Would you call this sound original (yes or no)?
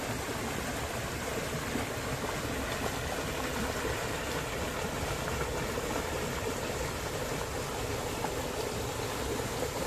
yes